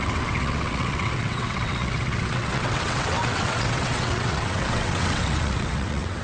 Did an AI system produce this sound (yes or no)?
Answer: yes